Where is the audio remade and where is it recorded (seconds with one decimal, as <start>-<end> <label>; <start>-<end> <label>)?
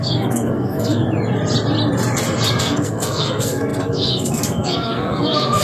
0.0-1.0 remade; 1.0-2.6 recorded; 2.6-5.6 remade